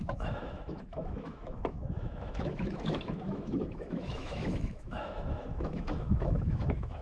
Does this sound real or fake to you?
fake